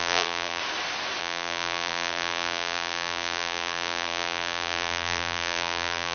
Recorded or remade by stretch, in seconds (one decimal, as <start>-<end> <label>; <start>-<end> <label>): 0.0-0.6 remade; 0.6-1.2 recorded; 1.2-6.1 remade